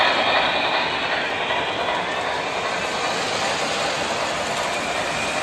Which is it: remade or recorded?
recorded